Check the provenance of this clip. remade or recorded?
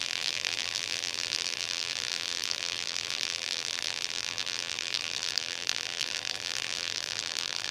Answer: remade